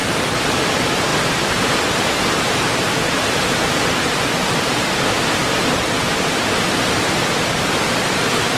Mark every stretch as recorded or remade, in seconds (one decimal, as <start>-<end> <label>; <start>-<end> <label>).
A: 0.0-0.5 recorded; 0.5-4.8 remade; 4.8-6.3 recorded; 6.3-8.6 remade